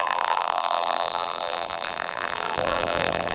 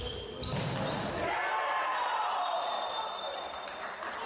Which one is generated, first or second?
first